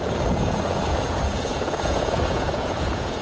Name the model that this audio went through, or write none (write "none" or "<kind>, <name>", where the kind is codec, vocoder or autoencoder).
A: vocoder, Vocos